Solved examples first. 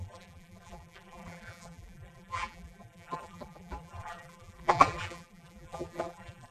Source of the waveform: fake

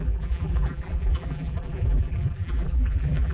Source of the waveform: fake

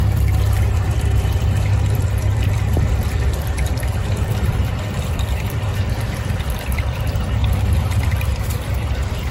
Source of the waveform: fake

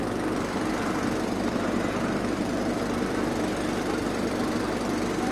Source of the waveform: fake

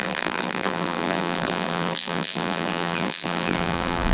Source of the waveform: fake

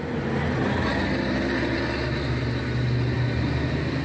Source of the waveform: real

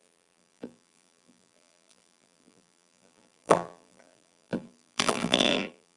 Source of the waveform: fake